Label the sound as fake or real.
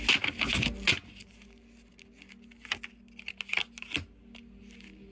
real